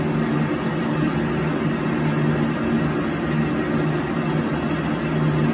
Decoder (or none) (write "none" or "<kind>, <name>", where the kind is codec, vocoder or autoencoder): none